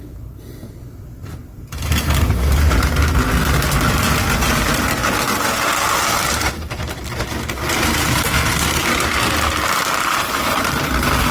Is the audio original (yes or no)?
yes